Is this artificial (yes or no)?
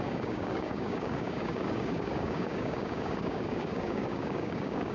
yes